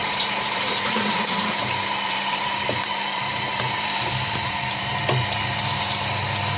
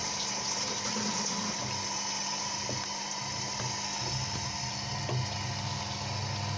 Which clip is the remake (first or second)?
first